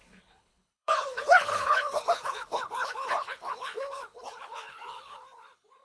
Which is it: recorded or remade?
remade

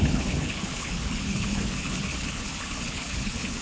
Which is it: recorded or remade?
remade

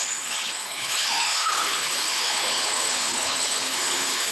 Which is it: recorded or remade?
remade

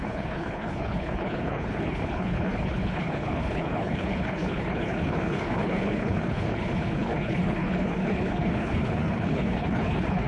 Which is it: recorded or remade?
remade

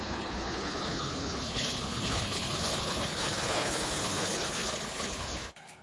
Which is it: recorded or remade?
remade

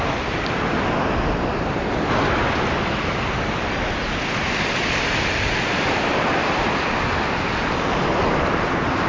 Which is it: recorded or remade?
recorded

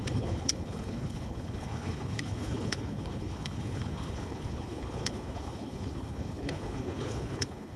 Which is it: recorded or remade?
remade